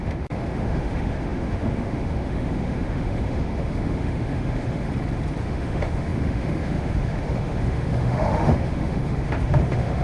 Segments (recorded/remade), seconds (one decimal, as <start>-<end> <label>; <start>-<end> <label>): 0.0-4.9 remade; 4.9-5.4 recorded; 5.4-10.0 remade